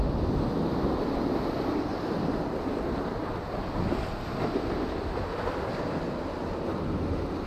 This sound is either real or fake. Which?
real